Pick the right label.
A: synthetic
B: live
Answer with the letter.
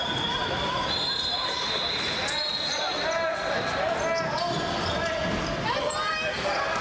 B